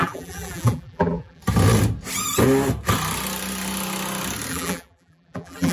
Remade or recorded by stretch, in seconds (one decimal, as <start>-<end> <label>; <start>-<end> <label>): 0.0-1.4 remade; 1.4-4.5 recorded; 4.5-5.7 remade